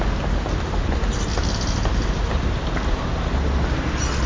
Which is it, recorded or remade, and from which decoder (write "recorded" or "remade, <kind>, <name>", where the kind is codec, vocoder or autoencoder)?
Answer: recorded